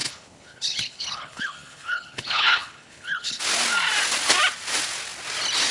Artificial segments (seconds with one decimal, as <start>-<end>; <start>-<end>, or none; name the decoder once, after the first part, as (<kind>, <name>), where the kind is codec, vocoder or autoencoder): 0.0-3.4 (codec, HILCodec)